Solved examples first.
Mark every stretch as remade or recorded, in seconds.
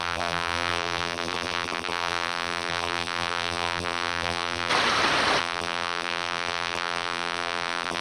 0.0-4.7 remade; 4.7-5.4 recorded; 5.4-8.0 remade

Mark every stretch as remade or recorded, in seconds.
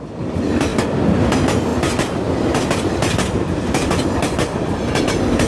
0.0-0.7 remade; 0.7-1.2 recorded; 1.2-5.5 remade